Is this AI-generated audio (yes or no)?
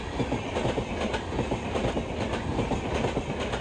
no